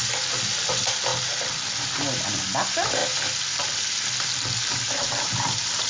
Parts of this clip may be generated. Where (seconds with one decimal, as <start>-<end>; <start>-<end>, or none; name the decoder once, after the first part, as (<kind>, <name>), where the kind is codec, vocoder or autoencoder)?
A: 5.0-5.9 (vocoder, BigVGAN v2)